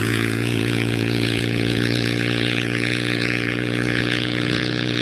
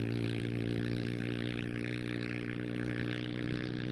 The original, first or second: second